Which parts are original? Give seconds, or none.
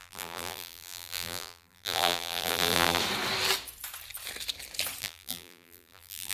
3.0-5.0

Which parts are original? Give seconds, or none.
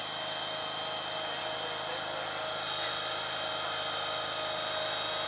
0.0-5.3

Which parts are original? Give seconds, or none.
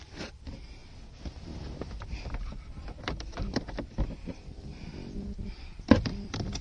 0.8-2.8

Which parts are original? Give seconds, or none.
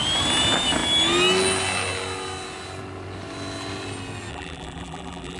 0.0-4.3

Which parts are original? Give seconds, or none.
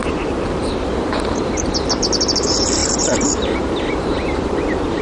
0.0-0.7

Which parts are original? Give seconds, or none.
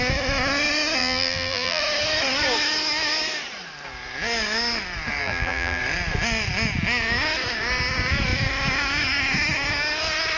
0.0-1.0; 1.8-5.2; 5.8-10.4